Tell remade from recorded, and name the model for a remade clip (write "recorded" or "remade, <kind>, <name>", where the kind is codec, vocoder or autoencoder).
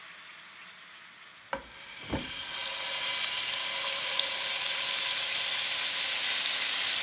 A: recorded